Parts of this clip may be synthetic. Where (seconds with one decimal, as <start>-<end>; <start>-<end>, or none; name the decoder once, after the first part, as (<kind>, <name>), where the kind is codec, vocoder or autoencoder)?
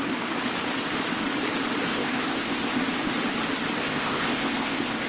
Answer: 1.9-2.8 (codec, ZipCodec); 3.8-5.1